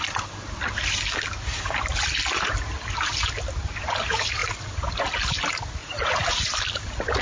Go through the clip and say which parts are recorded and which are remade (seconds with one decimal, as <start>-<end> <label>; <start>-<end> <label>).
0.0-5.8 recorded; 5.8-6.5 remade; 6.5-7.2 recorded